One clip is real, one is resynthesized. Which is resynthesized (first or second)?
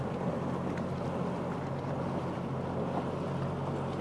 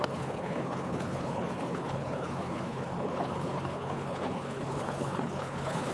second